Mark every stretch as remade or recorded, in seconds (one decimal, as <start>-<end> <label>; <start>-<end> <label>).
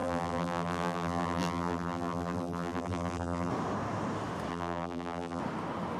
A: 0.0-3.5 remade; 3.5-4.5 recorded; 4.5-5.4 remade; 5.4-6.0 recorded